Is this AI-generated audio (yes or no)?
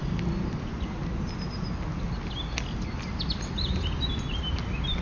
no